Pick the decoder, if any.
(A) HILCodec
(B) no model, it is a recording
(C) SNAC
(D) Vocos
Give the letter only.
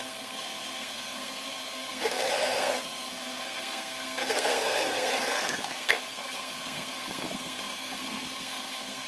C